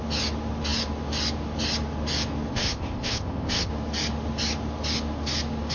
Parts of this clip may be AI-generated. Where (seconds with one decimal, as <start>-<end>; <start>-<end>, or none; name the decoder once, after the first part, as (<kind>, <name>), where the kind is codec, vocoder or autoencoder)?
2.5-3.7 (codec, ZipCodec)